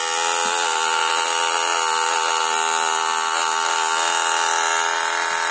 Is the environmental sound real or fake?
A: real